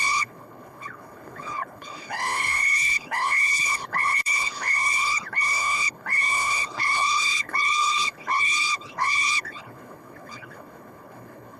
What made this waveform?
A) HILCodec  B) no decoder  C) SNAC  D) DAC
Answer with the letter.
A